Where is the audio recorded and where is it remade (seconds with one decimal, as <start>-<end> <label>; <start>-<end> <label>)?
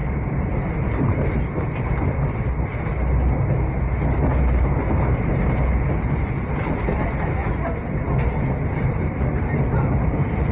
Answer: 0.0-1.4 remade; 1.4-4.3 recorded; 4.3-5.6 remade; 5.6-10.5 recorded